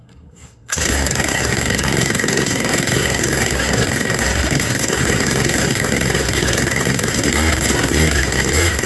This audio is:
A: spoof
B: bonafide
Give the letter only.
A